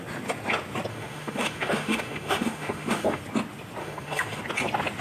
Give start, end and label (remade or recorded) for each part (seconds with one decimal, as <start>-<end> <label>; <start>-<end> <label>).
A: 0.0-0.9 recorded; 0.9-3.2 remade; 3.2-3.8 recorded; 3.8-4.4 remade; 4.4-5.0 recorded